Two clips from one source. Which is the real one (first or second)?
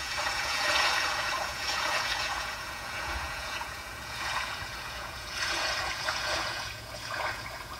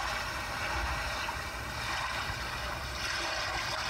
second